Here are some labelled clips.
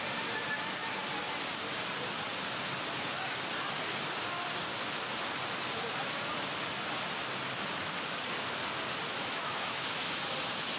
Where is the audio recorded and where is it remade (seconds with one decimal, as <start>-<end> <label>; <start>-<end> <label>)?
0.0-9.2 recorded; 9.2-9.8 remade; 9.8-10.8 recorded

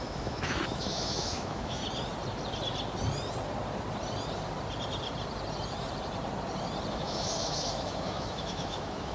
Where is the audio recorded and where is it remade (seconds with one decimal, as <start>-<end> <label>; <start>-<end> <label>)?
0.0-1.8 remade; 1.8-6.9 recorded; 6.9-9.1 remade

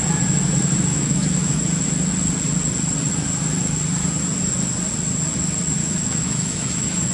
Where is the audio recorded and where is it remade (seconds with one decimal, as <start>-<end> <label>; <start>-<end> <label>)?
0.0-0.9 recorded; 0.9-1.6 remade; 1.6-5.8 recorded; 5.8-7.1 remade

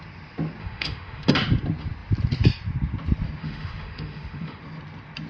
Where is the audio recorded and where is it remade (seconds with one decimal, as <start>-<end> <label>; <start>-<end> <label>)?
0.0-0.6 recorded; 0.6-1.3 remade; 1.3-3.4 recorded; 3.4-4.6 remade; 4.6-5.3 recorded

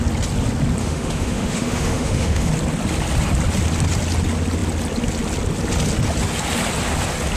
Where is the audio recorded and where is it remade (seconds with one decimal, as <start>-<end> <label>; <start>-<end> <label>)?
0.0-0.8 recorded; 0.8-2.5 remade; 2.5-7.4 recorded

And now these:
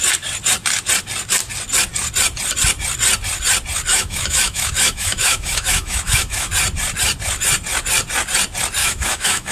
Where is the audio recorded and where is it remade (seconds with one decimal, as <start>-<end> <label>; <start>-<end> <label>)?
0.0-3.9 recorded; 3.9-6.5 remade; 6.5-8.8 recorded; 8.8-9.5 remade

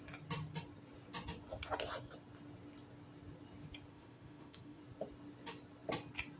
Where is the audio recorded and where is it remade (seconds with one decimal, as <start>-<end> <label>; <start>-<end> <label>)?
0.0-3.9 recorded; 3.9-4.8 remade; 4.8-6.4 recorded

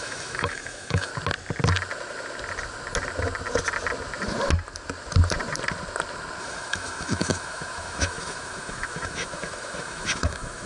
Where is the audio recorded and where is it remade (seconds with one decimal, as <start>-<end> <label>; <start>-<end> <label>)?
0.0-1.1 remade; 1.1-6.4 recorded; 6.4-10.7 remade